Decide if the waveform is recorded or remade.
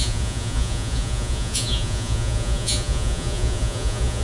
remade